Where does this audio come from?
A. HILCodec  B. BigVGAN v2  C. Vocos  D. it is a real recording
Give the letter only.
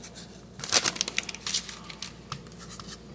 D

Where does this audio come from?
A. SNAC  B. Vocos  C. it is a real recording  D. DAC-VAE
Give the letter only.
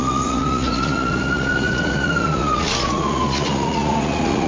B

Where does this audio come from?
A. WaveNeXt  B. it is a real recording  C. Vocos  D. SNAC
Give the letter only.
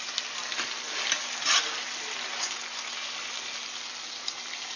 B